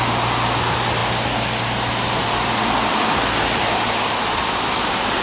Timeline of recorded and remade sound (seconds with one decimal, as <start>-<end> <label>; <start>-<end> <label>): 0.0-5.2 recorded